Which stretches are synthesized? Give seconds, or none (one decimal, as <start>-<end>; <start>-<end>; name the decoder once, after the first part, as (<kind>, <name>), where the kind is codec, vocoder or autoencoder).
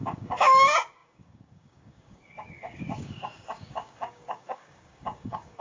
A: 0.0-5.6 (codec, DAC)